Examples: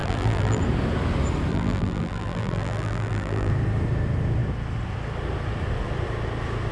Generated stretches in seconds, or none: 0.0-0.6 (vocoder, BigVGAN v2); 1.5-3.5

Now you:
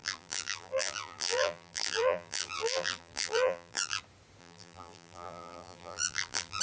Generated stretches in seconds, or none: 0.0-4.0 (vocoder, BigVGAN v2); 4.4-6.6

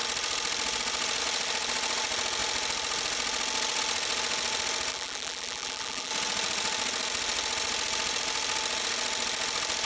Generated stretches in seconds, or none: 4.9-6.1 (vocoder, BigVGAN v2)

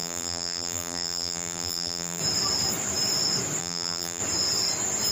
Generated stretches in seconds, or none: 0.0-2.2 (vocoder, BigVGAN v2); 3.6-4.2